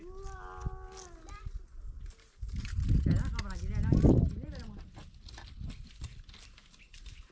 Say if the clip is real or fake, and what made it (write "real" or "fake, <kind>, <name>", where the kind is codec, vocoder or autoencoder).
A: real